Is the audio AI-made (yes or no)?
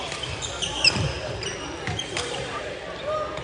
no